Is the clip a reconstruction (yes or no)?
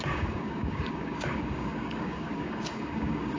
yes